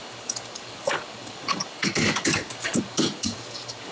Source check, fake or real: fake